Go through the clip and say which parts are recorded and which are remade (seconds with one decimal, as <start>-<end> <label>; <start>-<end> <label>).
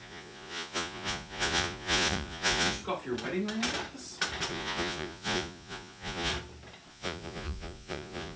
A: 0.0-2.8 remade; 2.8-4.5 recorded; 4.5-6.3 remade; 6.3-6.9 recorded; 6.9-8.4 remade